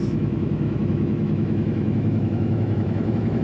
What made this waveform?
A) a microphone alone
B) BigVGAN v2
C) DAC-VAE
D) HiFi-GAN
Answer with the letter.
C